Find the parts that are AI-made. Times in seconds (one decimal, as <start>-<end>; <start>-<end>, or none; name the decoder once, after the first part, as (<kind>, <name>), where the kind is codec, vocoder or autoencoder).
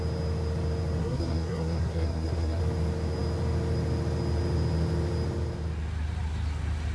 1.0-2.6 (codec, SNAC)